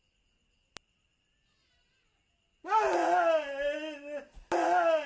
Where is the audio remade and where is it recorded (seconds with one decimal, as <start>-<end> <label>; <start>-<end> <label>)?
0.0-5.1 recorded